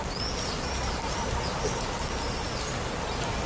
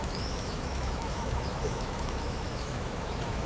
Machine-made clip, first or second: second